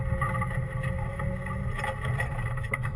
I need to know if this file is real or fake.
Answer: real